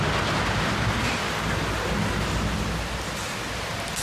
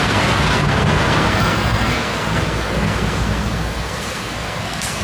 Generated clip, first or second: second